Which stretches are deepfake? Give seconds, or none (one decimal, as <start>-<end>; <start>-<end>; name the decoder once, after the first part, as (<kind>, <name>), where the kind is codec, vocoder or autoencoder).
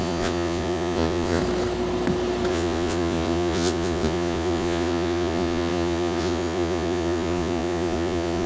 0.0-1.4 (vocoder, Vocos); 2.5-8.5